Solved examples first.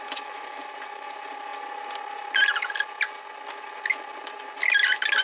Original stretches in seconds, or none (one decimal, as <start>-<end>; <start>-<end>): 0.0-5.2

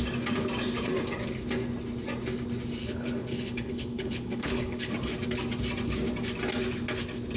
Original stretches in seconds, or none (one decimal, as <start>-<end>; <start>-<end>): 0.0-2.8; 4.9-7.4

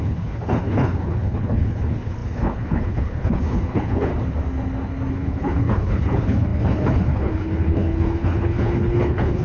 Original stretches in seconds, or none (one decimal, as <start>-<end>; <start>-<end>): 4.1-5.1